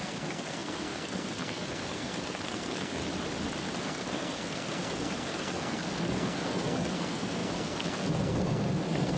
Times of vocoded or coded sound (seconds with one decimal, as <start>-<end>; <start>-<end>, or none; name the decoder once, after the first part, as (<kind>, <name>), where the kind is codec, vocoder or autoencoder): 0.0-3.0 (codec, SNAC); 3.8-9.2